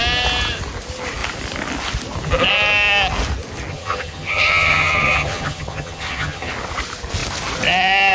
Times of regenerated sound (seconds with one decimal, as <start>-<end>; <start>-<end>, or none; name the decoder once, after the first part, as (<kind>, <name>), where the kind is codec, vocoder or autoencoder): 3.7-6.5 (vocoder, HiFi-GAN)